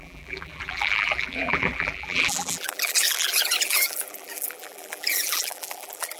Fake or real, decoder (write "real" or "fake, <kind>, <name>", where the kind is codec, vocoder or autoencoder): fake, vocoder, BigVGAN v2